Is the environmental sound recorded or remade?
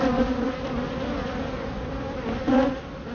recorded